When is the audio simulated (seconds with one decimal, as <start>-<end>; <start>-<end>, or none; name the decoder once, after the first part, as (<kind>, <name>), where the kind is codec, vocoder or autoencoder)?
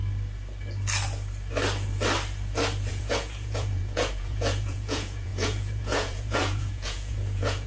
2.9-7.7 (vocoder, Vocos)